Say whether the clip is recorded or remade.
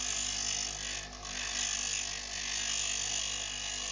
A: recorded